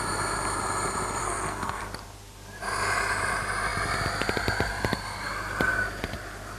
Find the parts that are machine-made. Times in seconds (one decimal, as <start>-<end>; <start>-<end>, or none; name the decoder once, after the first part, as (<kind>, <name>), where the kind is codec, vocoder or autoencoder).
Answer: 1.2-1.8 (codec, SNAC)